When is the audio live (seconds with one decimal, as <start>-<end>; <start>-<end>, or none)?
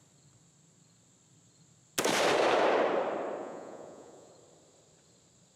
0.0-3.4; 4.3-5.6